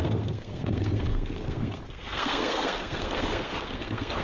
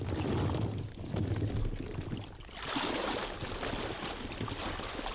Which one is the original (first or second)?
second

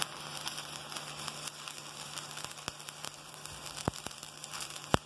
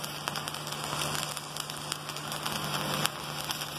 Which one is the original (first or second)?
second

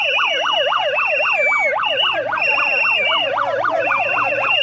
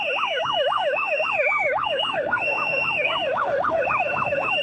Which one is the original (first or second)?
first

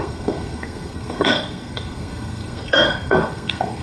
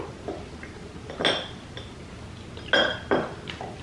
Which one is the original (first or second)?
second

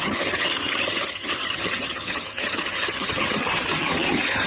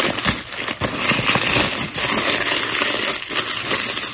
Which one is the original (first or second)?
second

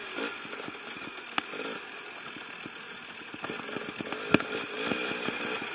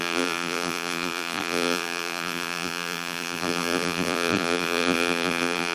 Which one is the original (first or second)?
first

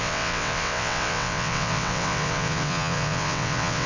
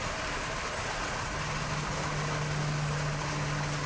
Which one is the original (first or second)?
second